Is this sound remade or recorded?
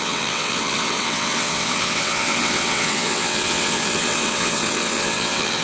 remade